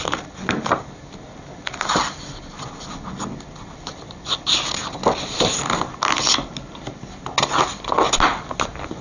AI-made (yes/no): no